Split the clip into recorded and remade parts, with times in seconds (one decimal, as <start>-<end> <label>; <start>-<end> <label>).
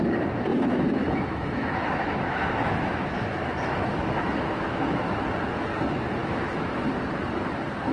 0.0-0.5 recorded; 0.5-5.2 remade; 5.2-6.2 recorded; 6.2-6.8 remade; 6.8-7.9 recorded